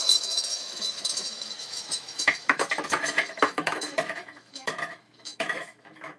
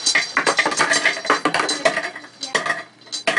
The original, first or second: second